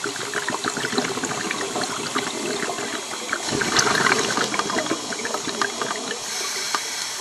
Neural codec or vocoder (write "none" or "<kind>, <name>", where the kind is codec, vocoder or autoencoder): none